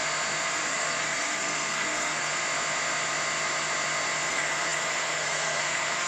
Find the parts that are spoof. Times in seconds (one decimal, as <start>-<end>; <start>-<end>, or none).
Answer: 0.7-2.3; 4.3-6.1